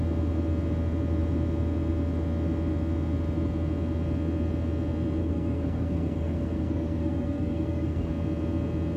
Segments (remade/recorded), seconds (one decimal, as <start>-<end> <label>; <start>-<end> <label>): 0.0-5.2 recorded; 5.2-8.1 remade; 8.1-9.0 recorded